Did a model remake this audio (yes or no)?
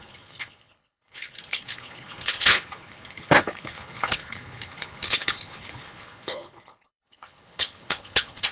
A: yes